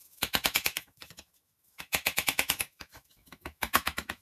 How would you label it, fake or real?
fake